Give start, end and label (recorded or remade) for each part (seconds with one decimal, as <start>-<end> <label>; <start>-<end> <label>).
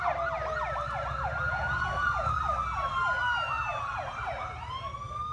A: 0.0-5.3 recorded